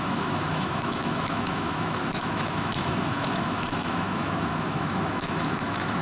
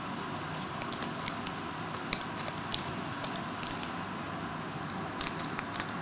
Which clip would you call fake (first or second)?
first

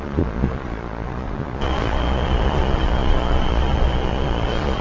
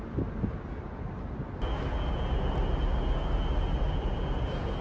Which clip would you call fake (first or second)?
first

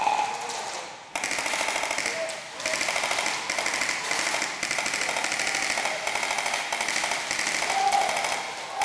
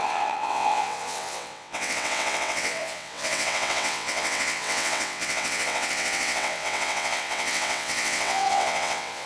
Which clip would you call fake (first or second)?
second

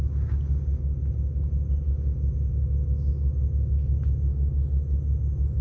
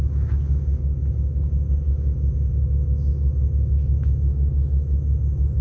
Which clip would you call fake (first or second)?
second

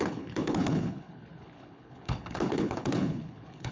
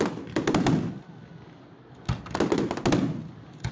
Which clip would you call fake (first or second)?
first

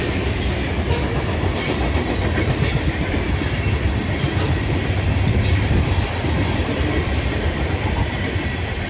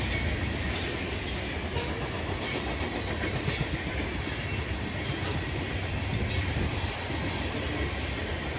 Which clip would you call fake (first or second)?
first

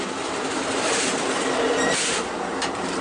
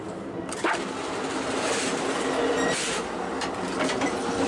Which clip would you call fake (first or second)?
first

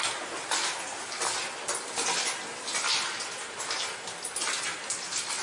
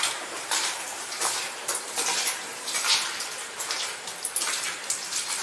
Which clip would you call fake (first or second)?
second